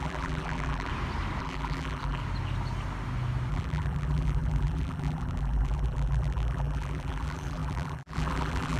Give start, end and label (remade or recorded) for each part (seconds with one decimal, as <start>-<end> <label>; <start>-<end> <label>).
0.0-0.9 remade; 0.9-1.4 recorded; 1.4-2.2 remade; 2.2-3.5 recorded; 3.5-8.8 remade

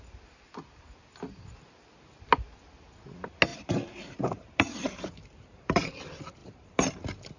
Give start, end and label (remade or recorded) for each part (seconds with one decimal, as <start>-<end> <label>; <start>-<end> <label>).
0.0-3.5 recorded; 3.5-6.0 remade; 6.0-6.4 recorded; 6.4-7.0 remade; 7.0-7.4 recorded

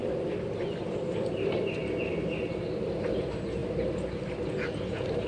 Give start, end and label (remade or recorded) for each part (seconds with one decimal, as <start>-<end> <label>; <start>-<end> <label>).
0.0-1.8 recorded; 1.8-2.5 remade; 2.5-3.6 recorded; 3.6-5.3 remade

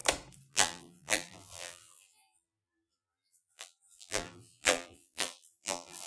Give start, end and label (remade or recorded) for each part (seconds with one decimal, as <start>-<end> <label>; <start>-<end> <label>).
0.0-0.5 recorded; 0.5-6.1 remade

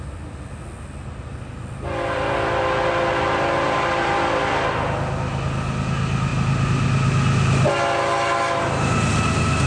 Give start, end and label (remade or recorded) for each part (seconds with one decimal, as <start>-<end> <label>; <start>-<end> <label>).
0.0-9.7 recorded